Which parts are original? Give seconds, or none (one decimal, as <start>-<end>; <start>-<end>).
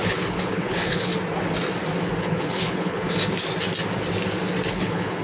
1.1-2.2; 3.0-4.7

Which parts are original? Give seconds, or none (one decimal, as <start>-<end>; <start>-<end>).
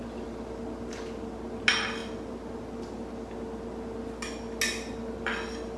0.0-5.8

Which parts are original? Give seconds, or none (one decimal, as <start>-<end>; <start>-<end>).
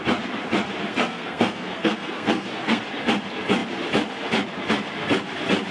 0.0-0.9; 2.8-5.7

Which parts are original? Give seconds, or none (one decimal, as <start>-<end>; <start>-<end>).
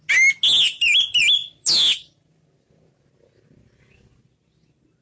0.0-5.0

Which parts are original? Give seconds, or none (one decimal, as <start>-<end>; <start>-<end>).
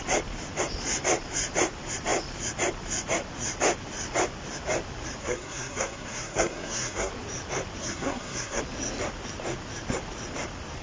0.0-5.2; 7.1-7.8; 8.6-10.8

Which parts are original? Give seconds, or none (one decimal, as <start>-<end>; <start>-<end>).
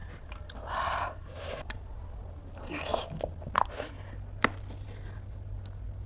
0.0-6.1